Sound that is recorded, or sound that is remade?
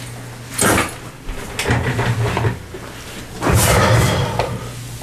recorded